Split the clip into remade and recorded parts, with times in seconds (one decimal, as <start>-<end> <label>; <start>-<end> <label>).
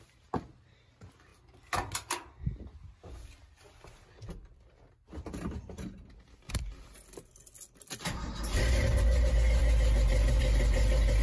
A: 0.0-11.2 recorded